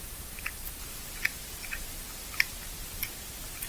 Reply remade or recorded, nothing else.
remade